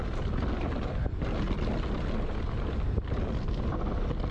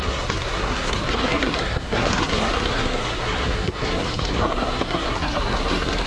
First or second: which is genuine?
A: first